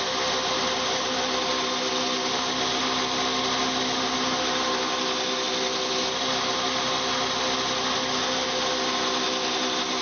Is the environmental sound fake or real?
real